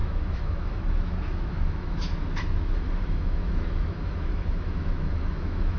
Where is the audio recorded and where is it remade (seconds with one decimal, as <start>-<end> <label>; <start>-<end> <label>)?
0.0-5.8 remade